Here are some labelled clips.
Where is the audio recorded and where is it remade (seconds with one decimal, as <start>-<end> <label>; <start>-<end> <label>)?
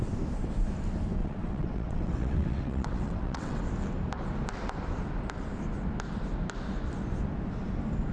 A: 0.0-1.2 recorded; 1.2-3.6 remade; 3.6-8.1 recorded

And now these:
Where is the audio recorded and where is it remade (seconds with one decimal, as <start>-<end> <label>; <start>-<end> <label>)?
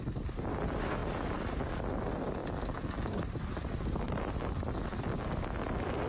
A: 0.0-6.1 recorded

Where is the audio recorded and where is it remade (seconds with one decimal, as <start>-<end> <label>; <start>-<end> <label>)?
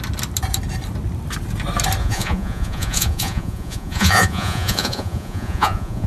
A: 0.0-2.0 recorded; 2.0-6.1 remade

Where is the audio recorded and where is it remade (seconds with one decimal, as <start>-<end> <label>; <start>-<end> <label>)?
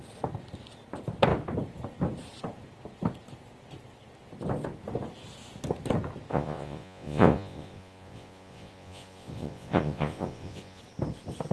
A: 0.0-6.3 recorded; 6.3-10.8 remade; 10.8-11.5 recorded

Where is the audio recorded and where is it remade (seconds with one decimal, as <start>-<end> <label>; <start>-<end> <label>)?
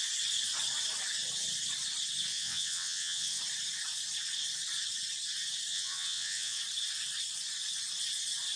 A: 0.0-2.3 recorded; 2.3-3.4 remade; 3.4-5.7 recorded; 5.7-6.6 remade; 6.6-8.6 recorded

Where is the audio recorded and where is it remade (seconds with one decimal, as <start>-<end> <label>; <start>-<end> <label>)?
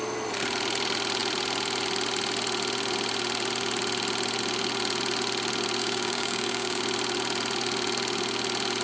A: 0.0-5.8 recorded; 5.8-6.8 remade; 6.8-8.8 recorded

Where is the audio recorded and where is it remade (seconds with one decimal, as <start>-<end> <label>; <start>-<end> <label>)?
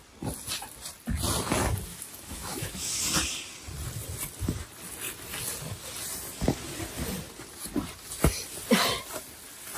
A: 0.0-1.9 recorded; 1.9-3.0 remade; 3.0-9.8 recorded